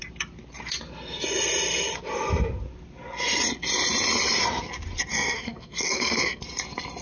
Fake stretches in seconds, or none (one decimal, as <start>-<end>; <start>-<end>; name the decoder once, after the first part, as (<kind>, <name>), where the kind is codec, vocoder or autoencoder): 5.1-6.4 (codec, SNAC)